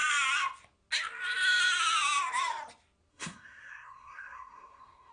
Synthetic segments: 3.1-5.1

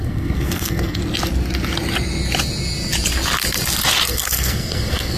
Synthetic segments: 0.0-1.0; 4.1-5.2

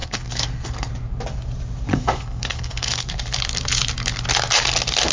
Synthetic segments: 0.0-0.9; 1.9-3.1

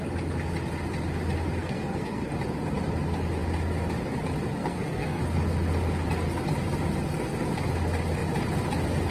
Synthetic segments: 1.6-2.3; 4.6-5.2

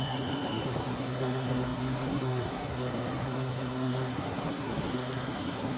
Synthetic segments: 0.0-5.8

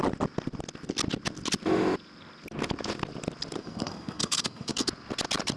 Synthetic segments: 3.6-4.9

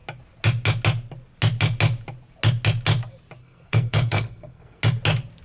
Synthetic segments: 3.4-4.8

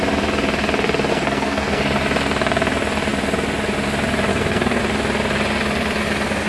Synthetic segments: 1.1-1.8; 4.3-4.8